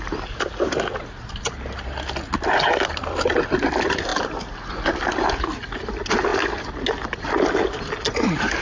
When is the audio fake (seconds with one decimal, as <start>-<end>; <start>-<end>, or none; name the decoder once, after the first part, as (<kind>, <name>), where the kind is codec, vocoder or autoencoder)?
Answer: none